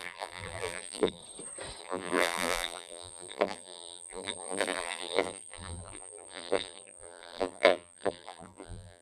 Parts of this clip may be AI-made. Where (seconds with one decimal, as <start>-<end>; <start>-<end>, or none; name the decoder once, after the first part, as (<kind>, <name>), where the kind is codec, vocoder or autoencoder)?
0.0-1.2 (vocoder, BigVGAN v2); 1.8-9.0